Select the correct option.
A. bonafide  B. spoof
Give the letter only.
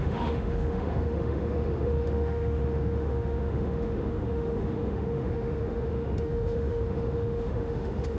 B